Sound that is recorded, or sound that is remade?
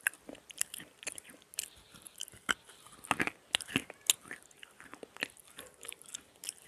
recorded